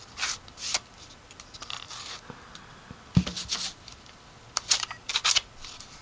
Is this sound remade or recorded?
recorded